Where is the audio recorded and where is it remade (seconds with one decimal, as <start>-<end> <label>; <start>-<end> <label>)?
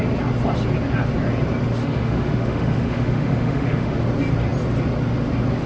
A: 0.0-1.8 recorded; 1.8-4.0 remade; 4.0-5.7 recorded